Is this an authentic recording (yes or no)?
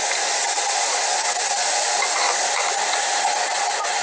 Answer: yes